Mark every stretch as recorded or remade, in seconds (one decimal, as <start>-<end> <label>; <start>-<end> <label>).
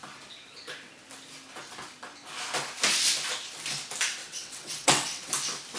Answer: 0.0-4.2 recorded; 4.2-5.3 remade; 5.3-5.8 recorded